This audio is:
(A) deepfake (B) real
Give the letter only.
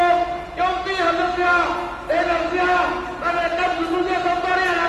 B